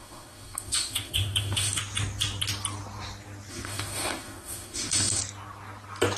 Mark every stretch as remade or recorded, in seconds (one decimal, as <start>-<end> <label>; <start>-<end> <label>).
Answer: 0.0-1.8 remade; 1.8-3.5 recorded; 3.5-5.2 remade; 5.2-6.2 recorded